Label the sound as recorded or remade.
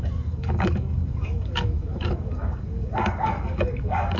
remade